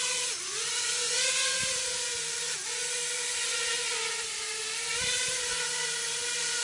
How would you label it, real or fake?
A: real